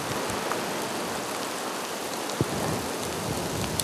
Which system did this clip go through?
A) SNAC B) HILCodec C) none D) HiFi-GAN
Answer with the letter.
C